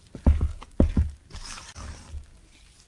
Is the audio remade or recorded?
remade